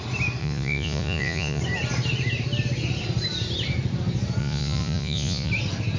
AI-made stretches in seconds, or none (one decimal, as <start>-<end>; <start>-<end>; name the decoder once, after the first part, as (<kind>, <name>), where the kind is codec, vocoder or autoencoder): 0.4-1.6 (vocoder, Vocos); 4.4-5.5